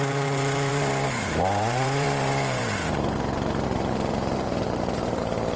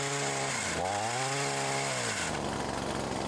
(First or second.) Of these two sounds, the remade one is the first